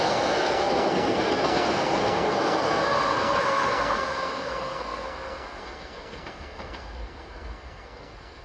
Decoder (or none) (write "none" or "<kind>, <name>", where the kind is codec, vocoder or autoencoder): codec, SNAC